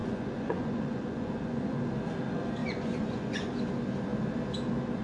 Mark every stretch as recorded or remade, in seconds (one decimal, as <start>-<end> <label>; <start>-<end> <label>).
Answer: 0.0-1.8 remade; 1.8-2.6 recorded; 2.6-3.5 remade; 3.5-5.0 recorded